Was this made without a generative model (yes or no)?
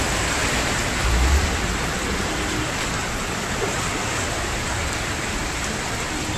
no